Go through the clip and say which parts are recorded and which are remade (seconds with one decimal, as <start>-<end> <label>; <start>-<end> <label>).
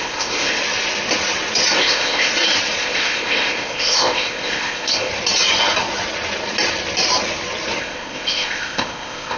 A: 0.0-0.6 remade; 0.6-1.8 recorded; 1.8-2.3 remade; 2.3-2.8 recorded; 2.8-5.1 remade; 5.1-7.8 recorded; 7.8-9.4 remade